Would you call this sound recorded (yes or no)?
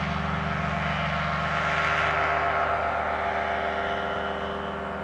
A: yes